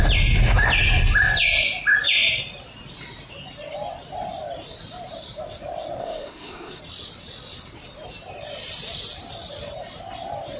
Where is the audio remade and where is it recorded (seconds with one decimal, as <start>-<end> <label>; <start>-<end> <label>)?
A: 0.0-6.0 recorded; 6.0-6.8 remade; 6.8-10.6 recorded

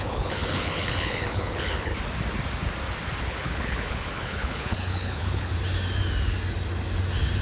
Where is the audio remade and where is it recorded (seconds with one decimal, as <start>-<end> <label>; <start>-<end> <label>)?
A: 0.0-1.9 remade; 1.9-3.2 recorded; 3.2-5.5 remade; 5.5-7.4 recorded